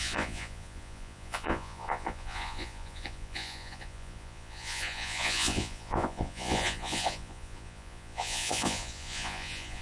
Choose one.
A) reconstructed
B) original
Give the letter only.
A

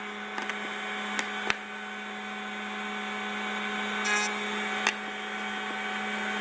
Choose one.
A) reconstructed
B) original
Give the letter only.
B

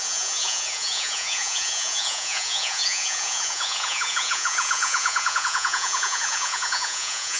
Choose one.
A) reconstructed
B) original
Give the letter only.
A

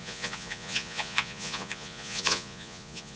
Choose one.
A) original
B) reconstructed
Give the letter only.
B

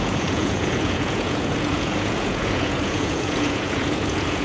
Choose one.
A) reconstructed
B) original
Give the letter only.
A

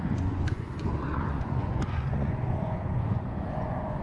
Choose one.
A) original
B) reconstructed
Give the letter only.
B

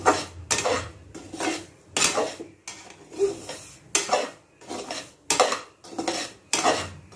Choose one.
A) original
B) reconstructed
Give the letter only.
A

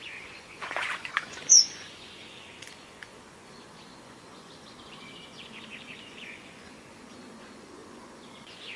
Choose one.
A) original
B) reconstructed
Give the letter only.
B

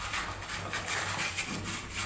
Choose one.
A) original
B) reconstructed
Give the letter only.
A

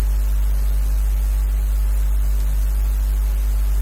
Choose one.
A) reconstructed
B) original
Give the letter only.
B